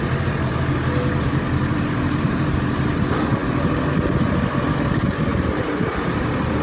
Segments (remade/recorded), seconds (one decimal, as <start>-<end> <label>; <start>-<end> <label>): 0.0-1.7 recorded; 1.7-2.6 remade; 2.6-5.3 recorded; 5.3-6.0 remade; 6.0-6.6 recorded